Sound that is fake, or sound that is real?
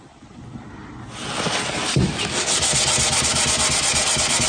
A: real